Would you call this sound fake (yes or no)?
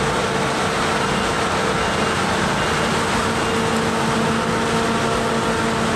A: no